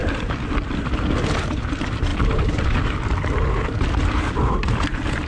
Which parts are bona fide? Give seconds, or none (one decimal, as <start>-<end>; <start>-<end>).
0.0-0.9; 2.1-4.3